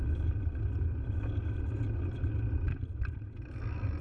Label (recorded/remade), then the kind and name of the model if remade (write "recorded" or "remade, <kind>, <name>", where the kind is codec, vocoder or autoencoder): recorded